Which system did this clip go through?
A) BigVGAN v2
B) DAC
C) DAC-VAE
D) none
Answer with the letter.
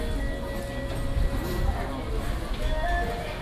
D